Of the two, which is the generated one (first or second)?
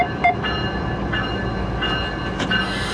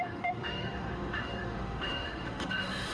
second